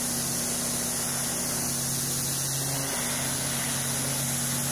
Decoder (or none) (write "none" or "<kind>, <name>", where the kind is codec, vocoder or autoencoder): none